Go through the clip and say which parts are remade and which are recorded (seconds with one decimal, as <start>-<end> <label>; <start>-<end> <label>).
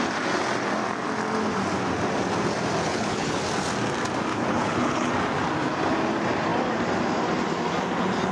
0.0-2.8 recorded; 2.8-3.4 remade; 3.4-4.3 recorded; 4.3-5.1 remade; 5.1-8.3 recorded